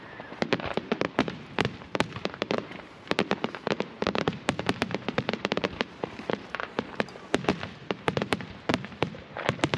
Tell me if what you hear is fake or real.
fake